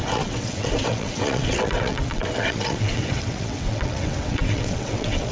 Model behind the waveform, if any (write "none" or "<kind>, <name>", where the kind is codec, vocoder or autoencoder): vocoder, WaveNeXt